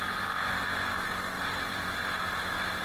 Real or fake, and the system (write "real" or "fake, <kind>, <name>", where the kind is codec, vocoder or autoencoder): real